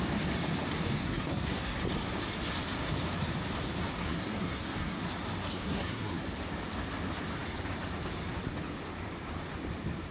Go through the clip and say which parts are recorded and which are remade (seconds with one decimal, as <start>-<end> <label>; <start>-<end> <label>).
0.0-1.0 recorded; 1.0-1.8 remade; 1.8-4.0 recorded; 4.0-5.0 remade; 5.0-5.5 recorded; 5.5-6.2 remade; 6.2-10.1 recorded